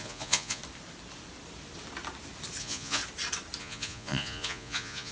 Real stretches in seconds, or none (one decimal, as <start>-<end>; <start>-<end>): 0.6-2.6; 3.0-3.6